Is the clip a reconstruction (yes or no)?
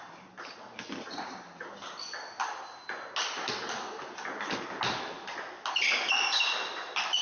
no